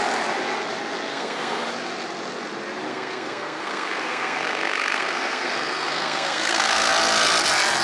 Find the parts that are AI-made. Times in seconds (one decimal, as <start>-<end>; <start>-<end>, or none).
1.1-1.6; 2.9-6.9